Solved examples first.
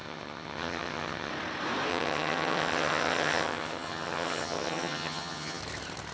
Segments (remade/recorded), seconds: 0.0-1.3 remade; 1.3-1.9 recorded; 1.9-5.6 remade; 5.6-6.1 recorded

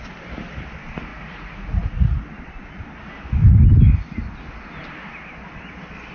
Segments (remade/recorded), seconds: 0.0-1.1 recorded; 1.1-2.3 remade; 2.3-6.1 recorded

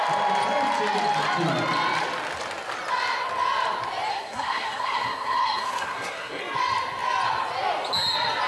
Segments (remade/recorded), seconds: 0.0-4.1 recorded; 4.1-6.4 remade; 6.4-8.5 recorded